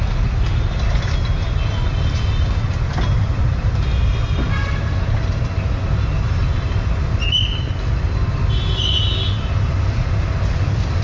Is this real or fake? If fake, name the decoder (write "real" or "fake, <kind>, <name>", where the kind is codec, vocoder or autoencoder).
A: real